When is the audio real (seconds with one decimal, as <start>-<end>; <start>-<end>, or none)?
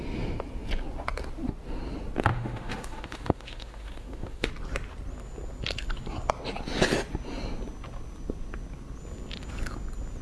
0.0-2.3; 4.5-10.2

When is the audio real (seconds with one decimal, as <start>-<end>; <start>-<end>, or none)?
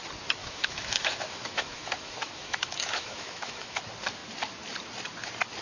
0.0-0.4; 3.8-5.6